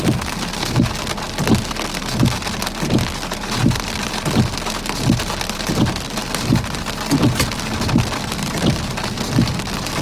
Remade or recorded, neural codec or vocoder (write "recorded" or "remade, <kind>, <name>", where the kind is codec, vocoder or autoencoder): recorded